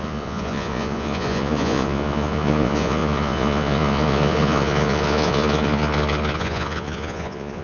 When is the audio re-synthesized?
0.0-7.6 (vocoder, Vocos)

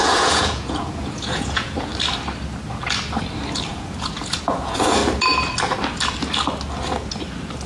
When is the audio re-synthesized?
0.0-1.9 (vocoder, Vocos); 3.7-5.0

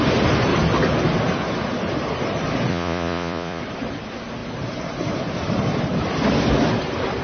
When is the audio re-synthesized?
2.7-3.6 (vocoder, Vocos)

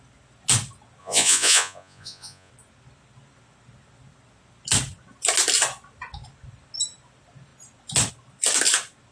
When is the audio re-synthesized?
1.0-2.5 (vocoder, Vocos)

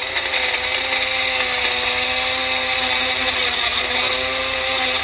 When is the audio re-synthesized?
none

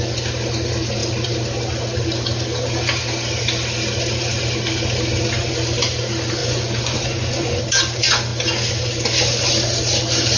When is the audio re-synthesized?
6.4-7.6 (vocoder, Vocos)

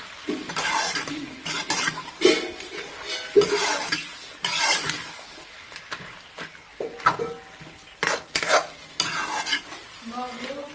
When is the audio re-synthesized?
none